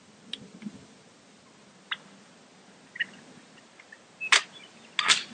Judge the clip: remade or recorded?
recorded